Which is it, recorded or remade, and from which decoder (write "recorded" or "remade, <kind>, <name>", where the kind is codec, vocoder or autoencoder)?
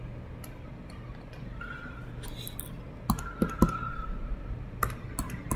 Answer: recorded